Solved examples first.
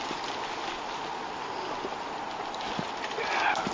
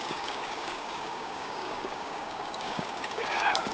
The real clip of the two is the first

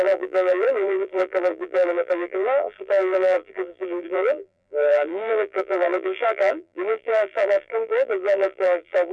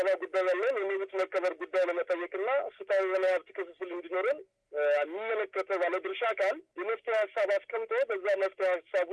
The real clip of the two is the second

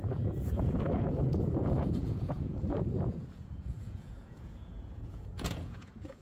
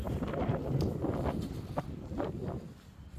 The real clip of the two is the second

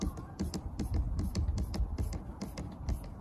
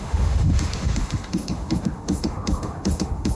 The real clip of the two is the first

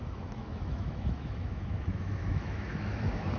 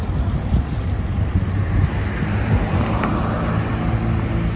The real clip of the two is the second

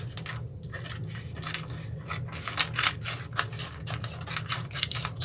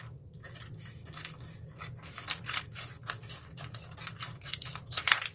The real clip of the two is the first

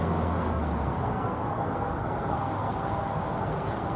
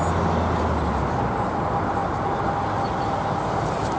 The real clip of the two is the second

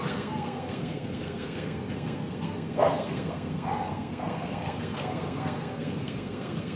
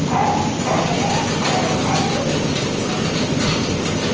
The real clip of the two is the second